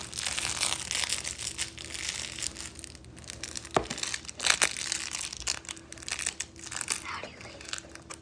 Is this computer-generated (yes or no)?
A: no